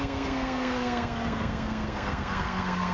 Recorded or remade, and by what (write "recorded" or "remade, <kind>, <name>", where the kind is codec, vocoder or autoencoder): remade, codec, SNAC